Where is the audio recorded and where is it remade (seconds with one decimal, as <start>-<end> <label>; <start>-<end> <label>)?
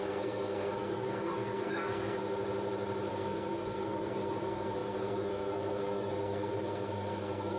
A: 0.0-2.2 remade; 2.2-3.1 recorded; 3.1-7.6 remade